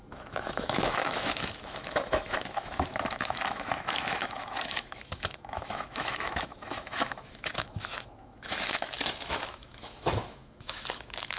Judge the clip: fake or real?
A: fake